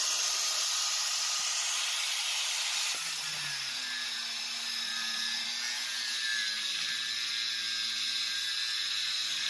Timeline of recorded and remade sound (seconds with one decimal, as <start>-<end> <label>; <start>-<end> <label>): 0.0-9.5 recorded